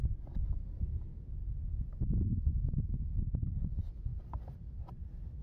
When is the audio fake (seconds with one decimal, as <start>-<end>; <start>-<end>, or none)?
none